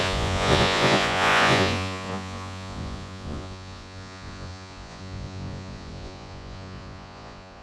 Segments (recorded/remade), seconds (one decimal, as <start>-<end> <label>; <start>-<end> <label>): 0.0-7.6 remade